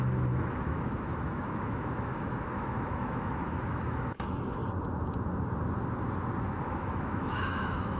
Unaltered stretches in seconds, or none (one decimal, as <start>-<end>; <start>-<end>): 4.6-6.7